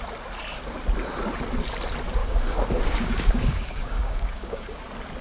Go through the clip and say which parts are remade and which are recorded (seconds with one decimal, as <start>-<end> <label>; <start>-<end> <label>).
0.0-2.2 recorded; 2.2-4.8 remade; 4.8-5.2 recorded